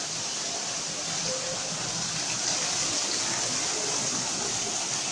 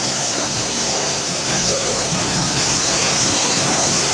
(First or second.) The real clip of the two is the first